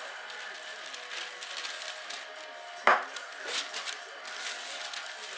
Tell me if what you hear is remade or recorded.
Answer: recorded